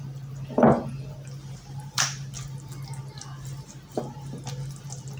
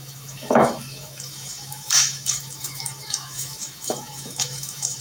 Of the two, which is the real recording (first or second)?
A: first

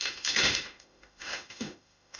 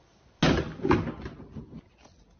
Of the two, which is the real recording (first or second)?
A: second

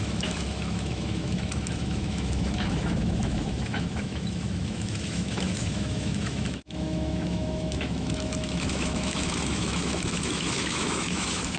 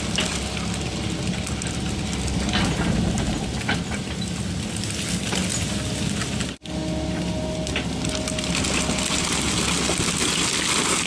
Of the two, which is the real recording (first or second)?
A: second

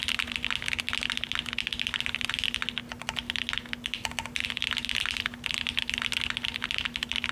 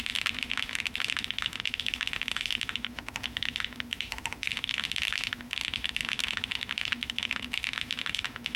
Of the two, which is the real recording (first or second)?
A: first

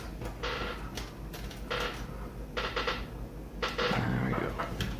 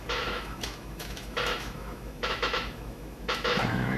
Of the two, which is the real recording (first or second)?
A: first